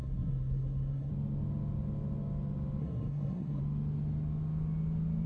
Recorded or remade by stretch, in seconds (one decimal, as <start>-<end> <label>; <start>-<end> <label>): 0.0-1.1 remade; 1.1-2.8 recorded; 2.8-3.6 remade; 3.6-5.3 recorded